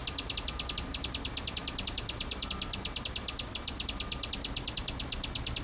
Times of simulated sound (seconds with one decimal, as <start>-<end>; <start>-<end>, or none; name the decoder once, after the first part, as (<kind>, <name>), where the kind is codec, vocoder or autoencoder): none